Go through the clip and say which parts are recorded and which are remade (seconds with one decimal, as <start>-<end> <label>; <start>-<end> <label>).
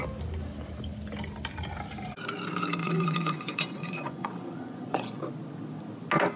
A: 0.0-2.8 recorded; 2.8-5.2 remade; 5.2-6.4 recorded